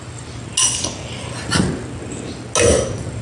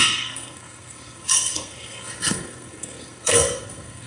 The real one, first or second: first